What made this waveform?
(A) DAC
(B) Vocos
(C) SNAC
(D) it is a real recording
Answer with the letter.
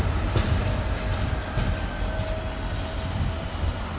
D